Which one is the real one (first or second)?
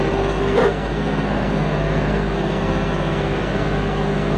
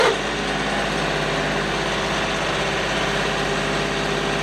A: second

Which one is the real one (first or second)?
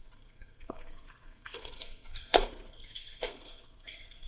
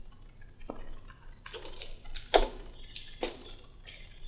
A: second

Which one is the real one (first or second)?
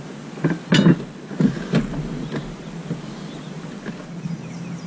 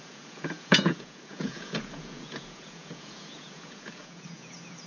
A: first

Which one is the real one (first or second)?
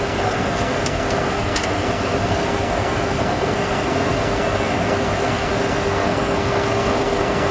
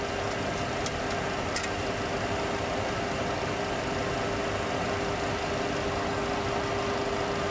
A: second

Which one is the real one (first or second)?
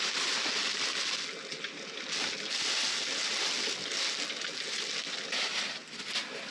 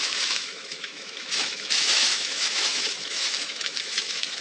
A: first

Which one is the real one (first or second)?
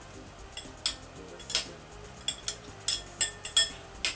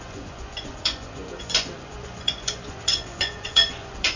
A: first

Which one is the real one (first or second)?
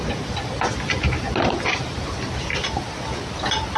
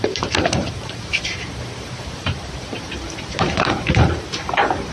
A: first